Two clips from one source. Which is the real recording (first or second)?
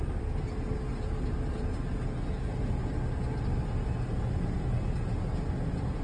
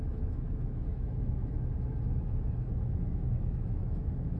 first